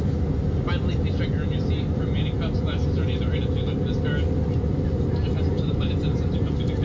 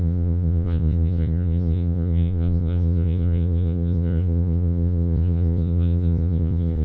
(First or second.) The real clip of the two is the first